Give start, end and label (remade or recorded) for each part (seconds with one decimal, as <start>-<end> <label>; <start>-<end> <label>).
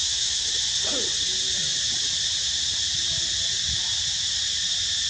0.0-0.5 remade; 0.5-5.1 recorded